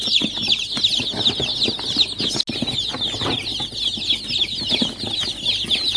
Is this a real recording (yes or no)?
yes